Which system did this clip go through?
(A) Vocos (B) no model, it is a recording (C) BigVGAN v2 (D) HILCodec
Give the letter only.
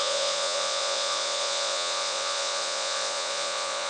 A